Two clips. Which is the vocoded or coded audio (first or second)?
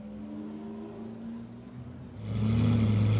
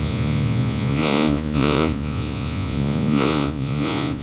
second